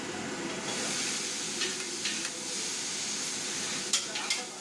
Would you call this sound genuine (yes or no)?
yes